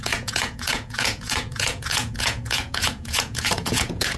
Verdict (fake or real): fake